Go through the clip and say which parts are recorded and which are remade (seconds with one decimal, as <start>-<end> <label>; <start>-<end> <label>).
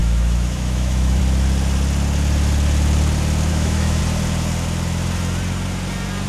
0.0-1.2 remade; 1.2-3.5 recorded; 3.5-4.0 remade; 4.0-6.3 recorded